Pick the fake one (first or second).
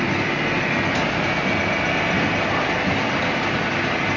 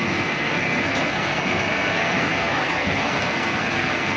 second